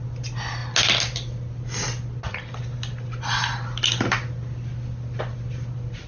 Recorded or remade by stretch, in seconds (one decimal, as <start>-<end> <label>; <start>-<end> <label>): 0.0-6.1 recorded